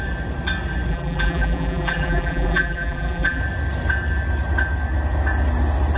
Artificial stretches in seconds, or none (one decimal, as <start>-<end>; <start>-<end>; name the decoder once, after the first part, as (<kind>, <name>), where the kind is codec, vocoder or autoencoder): 0.9-3.4 (vocoder, BigVGAN v2)